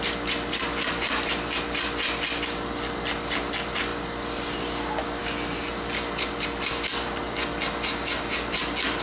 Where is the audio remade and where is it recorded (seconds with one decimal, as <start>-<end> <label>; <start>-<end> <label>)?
0.0-9.0 recorded